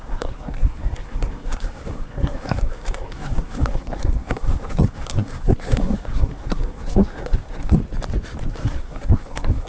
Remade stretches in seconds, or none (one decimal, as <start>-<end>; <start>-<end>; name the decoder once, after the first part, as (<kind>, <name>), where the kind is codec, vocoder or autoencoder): 0.0-7.8 (codec, SNAC); 8.5-9.7